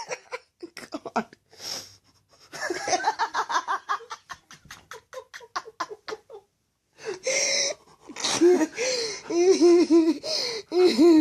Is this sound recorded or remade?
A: recorded